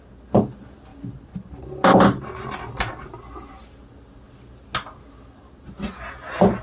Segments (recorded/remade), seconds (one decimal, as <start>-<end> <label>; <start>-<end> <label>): 0.0-6.6 recorded